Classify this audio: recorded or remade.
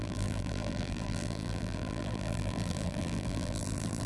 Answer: remade